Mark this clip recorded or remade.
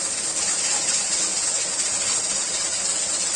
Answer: recorded